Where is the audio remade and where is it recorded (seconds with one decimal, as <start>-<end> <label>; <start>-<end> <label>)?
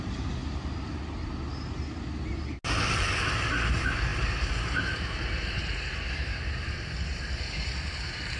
0.0-0.4 remade; 0.4-3.3 recorded; 3.3-8.4 remade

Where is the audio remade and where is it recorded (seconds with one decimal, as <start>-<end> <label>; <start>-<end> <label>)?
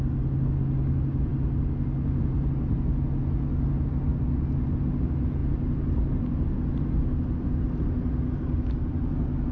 0.0-9.5 recorded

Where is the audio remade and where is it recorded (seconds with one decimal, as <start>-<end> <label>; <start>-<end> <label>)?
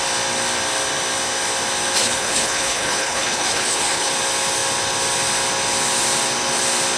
0.0-2.0 recorded; 2.0-4.1 remade; 4.1-7.0 recorded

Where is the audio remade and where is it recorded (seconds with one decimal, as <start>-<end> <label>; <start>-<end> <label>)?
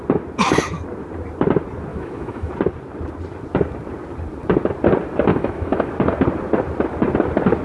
0.0-1.9 recorded; 1.9-2.5 remade; 2.5-5.3 recorded; 5.3-5.9 remade; 5.9-7.6 recorded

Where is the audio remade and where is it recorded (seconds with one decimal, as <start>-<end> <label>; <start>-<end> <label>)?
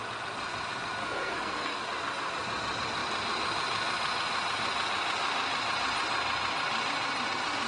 0.0-1.0 recorded; 1.0-1.8 remade; 1.8-7.7 recorded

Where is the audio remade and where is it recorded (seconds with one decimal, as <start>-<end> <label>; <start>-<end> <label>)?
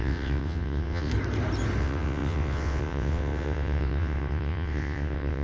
0.0-1.1 remade; 1.1-1.8 recorded; 1.8-5.4 remade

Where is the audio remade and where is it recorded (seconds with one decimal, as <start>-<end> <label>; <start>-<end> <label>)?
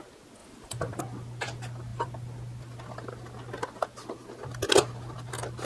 0.0-5.7 recorded